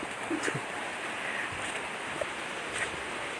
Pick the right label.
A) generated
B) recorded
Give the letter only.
B